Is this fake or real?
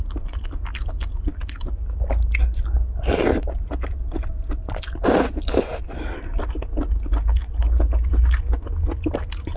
real